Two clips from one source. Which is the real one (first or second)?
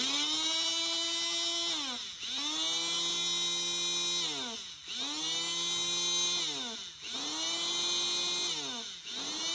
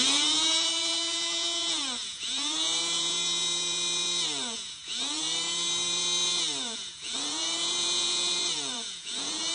first